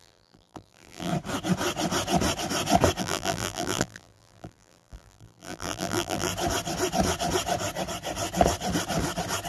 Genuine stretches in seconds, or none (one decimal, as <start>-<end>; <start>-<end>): 1.1-3.0; 6.3-9.5